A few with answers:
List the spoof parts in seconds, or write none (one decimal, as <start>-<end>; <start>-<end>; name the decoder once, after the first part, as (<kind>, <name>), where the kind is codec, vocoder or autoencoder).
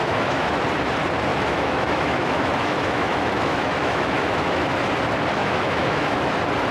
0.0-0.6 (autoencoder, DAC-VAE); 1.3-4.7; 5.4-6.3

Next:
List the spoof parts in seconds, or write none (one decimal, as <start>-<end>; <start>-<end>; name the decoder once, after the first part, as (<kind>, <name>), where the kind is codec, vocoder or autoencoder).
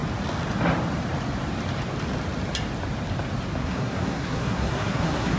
3.6-5.4 (codec, SNAC)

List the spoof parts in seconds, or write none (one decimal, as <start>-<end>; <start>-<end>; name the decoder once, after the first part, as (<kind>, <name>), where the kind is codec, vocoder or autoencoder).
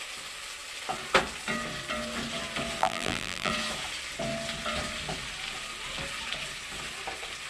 2.8-3.5 (vocoder, BigVGAN v2)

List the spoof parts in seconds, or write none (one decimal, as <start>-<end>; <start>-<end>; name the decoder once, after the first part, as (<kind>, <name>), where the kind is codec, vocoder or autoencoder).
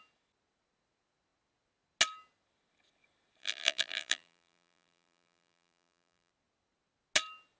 3.4-6.3 (vocoder, BigVGAN v2)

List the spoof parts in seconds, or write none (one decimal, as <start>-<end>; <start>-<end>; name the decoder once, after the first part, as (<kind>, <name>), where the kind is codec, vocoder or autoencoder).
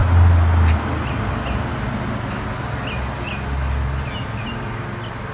none